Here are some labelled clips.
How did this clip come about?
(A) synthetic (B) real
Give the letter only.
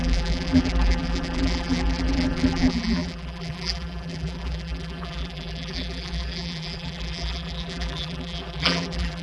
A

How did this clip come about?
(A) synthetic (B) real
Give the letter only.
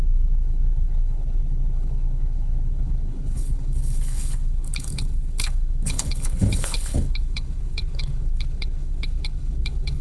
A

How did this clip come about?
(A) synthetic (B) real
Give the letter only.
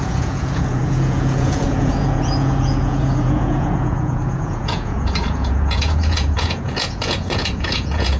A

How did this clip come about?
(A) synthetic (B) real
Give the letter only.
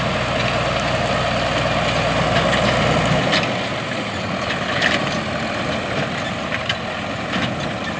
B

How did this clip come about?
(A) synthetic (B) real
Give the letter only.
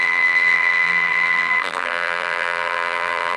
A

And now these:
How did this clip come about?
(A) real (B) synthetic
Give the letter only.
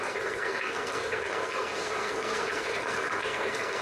B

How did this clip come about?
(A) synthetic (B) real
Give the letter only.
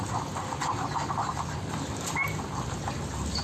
B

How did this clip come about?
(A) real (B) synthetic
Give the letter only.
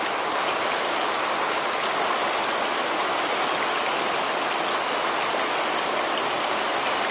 A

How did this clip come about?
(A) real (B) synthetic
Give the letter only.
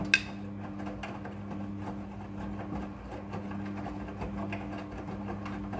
A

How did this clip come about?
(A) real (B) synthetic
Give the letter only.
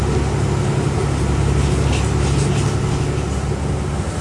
A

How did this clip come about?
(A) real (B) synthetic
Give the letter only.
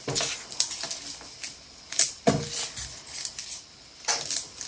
A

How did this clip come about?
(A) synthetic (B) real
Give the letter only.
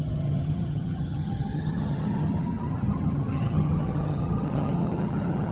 A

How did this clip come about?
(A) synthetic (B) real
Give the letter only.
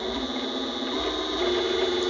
B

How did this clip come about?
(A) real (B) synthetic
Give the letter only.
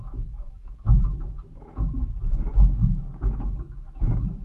B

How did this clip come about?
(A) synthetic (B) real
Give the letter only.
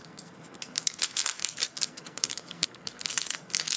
A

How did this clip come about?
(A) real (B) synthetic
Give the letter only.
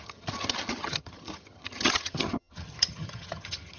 B